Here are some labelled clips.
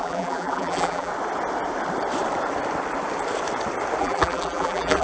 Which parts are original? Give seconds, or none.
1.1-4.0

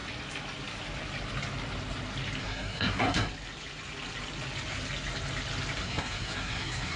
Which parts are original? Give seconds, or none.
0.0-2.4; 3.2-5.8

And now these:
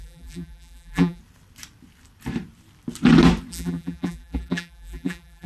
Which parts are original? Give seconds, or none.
1.2-3.5

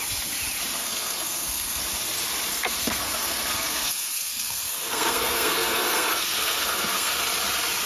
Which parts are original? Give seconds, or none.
0.0-0.8; 1.8-2.5; 7.2-7.9

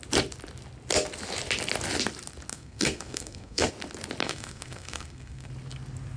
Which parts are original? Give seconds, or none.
0.0-2.5; 3.7-4.2; 5.5-6.2

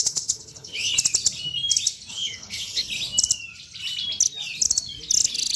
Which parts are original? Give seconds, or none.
0.9-2.1; 2.8-5.6

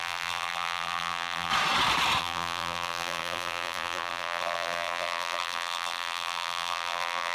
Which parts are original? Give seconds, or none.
1.5-2.2